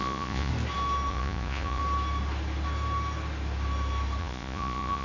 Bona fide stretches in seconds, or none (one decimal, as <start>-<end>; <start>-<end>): 0.5-1.1; 1.8-4.2